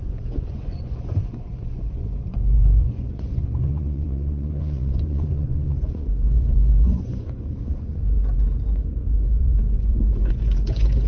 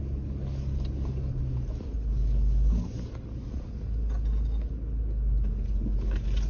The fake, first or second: first